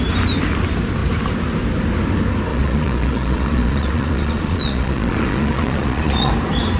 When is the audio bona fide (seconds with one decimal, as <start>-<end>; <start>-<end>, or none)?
0.0-2.5; 6.3-6.8